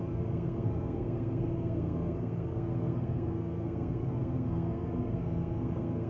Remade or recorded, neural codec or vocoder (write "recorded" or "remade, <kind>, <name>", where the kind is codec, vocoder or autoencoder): remade, codec, SNAC